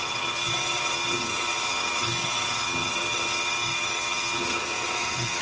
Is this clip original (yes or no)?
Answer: no